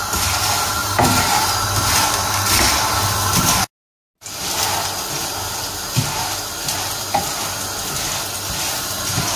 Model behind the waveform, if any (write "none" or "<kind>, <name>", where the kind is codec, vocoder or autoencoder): none